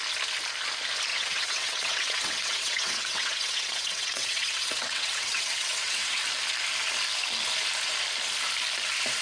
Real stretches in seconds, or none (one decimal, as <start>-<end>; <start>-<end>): 0.0-1.1; 6.2-9.2